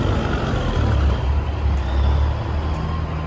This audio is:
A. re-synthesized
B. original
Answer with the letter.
B